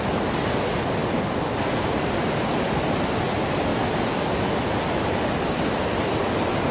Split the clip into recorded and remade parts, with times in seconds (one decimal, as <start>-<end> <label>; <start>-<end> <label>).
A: 0.0-6.7 recorded